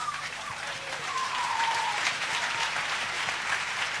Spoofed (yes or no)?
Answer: yes